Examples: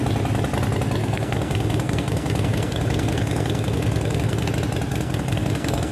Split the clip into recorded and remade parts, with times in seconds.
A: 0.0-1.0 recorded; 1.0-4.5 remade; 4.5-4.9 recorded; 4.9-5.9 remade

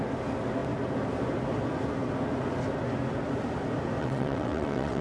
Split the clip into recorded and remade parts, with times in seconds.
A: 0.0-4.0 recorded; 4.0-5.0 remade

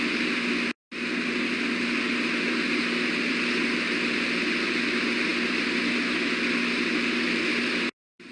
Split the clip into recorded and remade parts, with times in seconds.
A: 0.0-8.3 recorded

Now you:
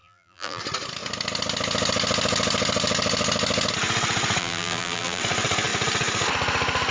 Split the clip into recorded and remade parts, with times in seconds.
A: 0.0-0.6 remade; 0.6-4.4 recorded; 4.4-5.2 remade; 5.2-6.9 recorded

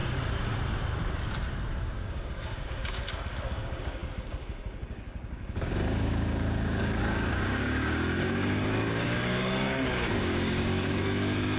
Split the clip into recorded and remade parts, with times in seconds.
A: 0.0-1.8 recorded; 1.8-11.6 remade

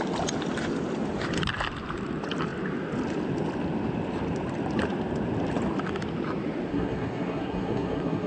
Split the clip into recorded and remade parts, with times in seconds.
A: 0.0-6.7 recorded; 6.7-8.3 remade

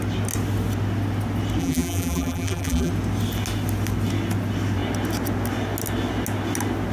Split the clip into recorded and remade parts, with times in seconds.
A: 0.0-1.6 recorded; 1.6-2.9 remade; 2.9-6.9 recorded

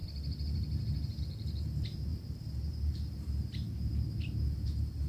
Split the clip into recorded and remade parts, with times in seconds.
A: 0.0-5.1 recorded